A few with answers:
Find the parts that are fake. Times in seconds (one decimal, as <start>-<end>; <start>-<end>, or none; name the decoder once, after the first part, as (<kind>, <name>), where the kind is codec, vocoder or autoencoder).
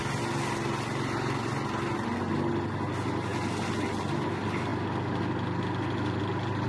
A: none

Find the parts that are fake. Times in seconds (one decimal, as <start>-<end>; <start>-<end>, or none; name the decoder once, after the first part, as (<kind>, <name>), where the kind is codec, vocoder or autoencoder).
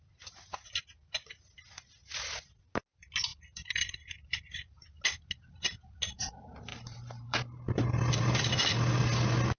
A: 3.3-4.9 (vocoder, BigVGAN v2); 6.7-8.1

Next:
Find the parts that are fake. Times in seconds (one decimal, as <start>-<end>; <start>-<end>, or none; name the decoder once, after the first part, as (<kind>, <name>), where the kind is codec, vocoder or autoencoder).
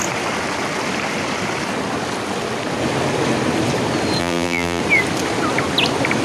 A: 4.2-4.8 (vocoder, BigVGAN v2)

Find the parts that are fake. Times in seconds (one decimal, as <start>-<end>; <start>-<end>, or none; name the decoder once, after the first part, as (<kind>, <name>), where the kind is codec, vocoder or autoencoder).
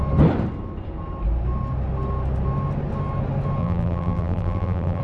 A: 3.6-5.0 (vocoder, BigVGAN v2)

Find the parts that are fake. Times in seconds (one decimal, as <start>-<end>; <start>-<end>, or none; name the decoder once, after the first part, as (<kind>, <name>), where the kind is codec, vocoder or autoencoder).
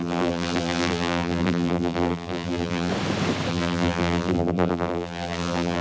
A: 0.0-2.9 (vocoder, BigVGAN v2); 3.5-5.8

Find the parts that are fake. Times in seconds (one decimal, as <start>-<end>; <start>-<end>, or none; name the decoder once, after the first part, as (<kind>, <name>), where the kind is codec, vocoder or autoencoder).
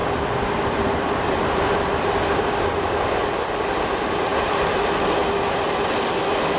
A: 0.0-1.9 (vocoder, BigVGAN v2); 4.3-5.0